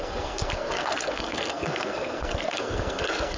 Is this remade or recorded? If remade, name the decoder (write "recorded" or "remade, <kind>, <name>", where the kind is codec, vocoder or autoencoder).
remade, codec, SNAC